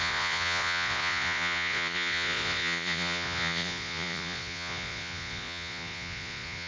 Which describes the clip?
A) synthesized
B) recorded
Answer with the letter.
A